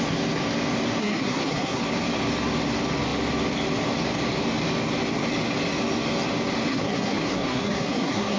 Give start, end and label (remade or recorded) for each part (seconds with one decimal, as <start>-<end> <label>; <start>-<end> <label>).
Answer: 0.0-1.0 recorded; 1.0-1.8 remade; 1.8-6.7 recorded; 6.7-8.4 remade